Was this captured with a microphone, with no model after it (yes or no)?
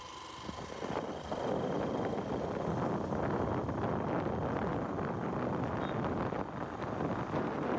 yes